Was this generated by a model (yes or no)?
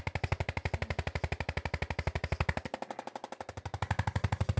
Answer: no